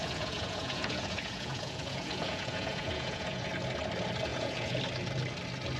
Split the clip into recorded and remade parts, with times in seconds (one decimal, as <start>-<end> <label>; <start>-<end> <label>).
0.0-3.5 remade; 3.5-4.3 recorded; 4.3-4.8 remade; 4.8-5.8 recorded